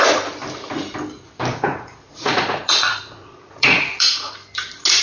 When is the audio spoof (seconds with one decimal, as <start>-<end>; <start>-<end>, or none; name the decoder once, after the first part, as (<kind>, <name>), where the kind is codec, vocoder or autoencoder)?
1.5-4.3 (vocoder, Vocos)